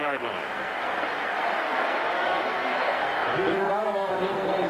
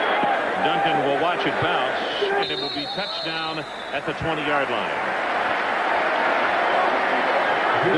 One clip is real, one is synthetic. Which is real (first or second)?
second